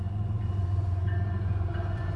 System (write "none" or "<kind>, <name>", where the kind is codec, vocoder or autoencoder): vocoder, Vocos